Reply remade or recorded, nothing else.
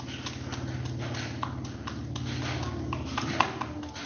recorded